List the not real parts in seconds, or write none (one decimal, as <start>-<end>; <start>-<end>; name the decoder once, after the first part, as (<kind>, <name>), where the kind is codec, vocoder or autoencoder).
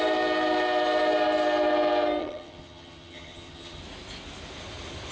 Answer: 2.2-3.8 (vocoder, HiFi-GAN)